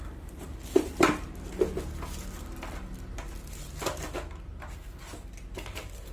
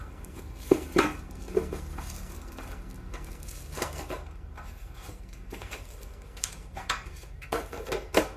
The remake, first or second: second